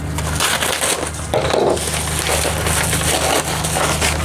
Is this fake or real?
real